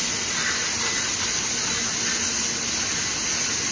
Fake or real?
real